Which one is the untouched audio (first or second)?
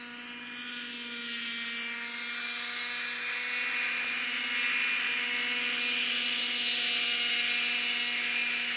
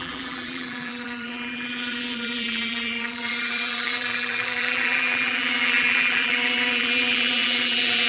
first